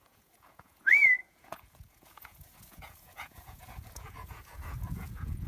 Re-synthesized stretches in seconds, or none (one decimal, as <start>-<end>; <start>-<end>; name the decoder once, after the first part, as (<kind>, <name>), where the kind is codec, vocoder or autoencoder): 0.0-5.5 (vocoder, Vocos)